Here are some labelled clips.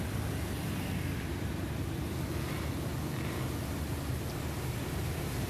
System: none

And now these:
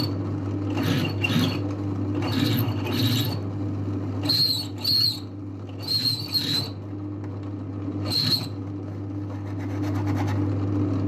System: none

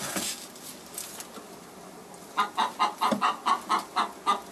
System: none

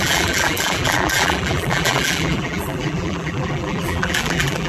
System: vocoder, BigVGAN v2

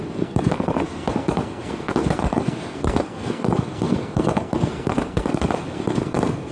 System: codec, SNAC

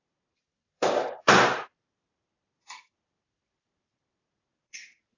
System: vocoder, BigVGAN v2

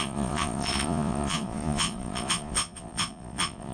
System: vocoder, Vocos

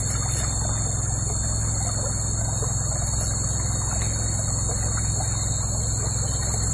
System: none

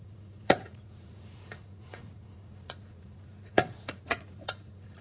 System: vocoder, Vocos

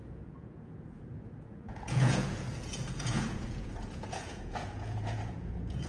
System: vocoder, Vocos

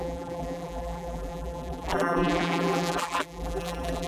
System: vocoder, BigVGAN v2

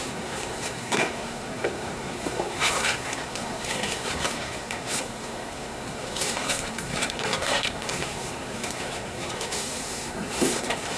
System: codec, SNAC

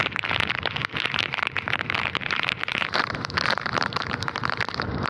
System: vocoder, BigVGAN v2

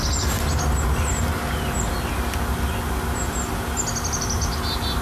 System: none